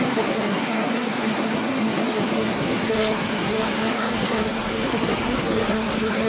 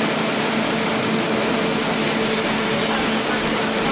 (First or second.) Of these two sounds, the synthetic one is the first